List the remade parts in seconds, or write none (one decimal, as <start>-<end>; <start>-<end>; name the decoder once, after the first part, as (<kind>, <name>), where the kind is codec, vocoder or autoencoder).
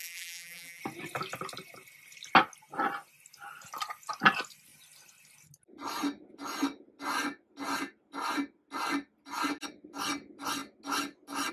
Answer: 0.0-0.8 (vocoder, BigVGAN v2)